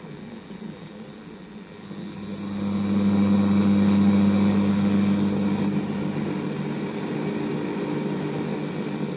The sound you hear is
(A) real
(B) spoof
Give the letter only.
A